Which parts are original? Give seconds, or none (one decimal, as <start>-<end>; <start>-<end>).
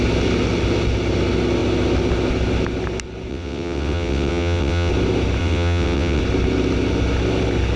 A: 0.0-3.3; 4.9-5.4; 6.2-7.8